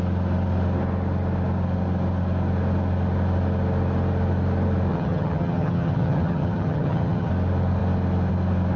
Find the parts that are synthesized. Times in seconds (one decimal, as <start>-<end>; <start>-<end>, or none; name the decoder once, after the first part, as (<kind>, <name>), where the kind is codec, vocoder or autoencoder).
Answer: 4.9-7.3 (vocoder, HiFi-GAN)

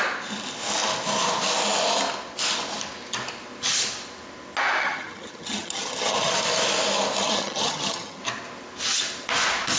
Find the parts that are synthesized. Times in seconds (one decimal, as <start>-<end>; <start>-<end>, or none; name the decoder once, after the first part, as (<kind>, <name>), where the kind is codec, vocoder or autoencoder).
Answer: 4.8-6.3 (vocoder, HiFi-GAN); 7.2-8.2

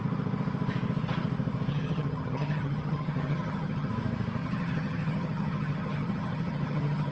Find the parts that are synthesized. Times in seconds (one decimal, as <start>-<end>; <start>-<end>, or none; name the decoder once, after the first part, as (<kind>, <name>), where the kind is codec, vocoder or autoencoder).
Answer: 1.7-3.9 (vocoder, HiFi-GAN); 4.4-7.1